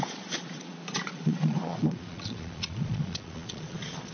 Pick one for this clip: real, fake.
fake